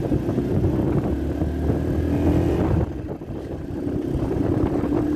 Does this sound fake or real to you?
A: real